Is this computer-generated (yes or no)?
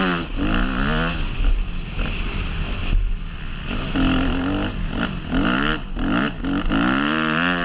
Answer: no